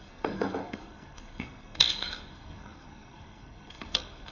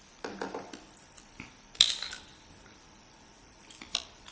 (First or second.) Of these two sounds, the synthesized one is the first